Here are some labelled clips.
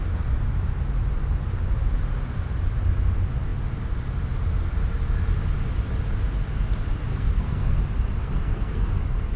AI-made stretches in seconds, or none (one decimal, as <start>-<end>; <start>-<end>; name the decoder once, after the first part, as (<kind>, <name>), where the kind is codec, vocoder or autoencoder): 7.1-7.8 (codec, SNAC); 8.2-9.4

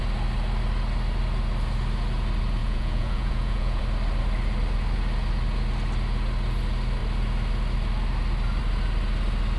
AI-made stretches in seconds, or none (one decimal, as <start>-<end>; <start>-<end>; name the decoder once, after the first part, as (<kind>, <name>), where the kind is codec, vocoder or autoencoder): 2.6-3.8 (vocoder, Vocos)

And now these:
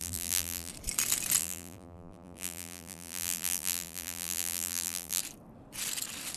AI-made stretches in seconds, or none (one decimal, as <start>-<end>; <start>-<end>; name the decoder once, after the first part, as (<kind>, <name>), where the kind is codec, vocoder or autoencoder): 0.0-0.7 (vocoder, BigVGAN v2); 1.4-5.2